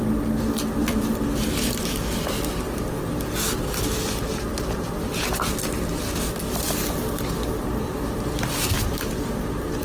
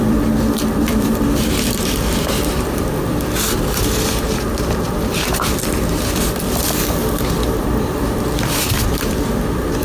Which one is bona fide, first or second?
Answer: first